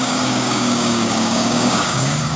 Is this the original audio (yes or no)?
no